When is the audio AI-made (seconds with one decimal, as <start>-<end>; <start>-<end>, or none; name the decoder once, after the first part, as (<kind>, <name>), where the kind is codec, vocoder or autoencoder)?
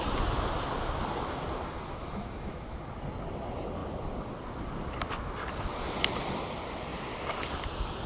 2.0-2.8 (autoencoder, DAC-VAE)